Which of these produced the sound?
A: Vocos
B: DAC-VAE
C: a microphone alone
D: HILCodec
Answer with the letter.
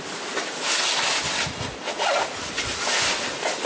C